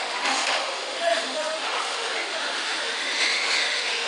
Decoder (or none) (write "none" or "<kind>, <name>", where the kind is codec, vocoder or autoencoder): autoencoder, DAC-VAE